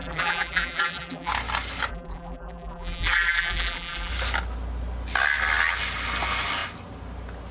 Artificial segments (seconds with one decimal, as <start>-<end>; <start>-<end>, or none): 0.0-1.3; 1.9-4.1